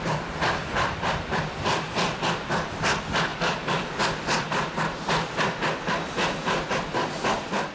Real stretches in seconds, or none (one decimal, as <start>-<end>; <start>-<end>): 0.0-3.3; 4.0-7.7